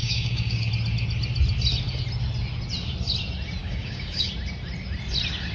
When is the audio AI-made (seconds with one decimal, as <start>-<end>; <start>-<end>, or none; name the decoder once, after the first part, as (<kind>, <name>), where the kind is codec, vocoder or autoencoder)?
0.0-0.7 (codec, DAC); 3.6-4.3